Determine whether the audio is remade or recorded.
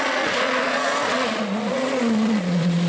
remade